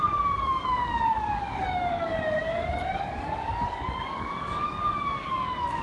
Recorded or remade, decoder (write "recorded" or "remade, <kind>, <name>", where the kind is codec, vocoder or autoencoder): remade, codec, DAC